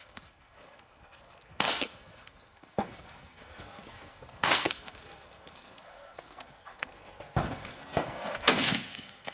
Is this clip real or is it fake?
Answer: fake